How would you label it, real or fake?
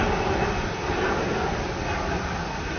real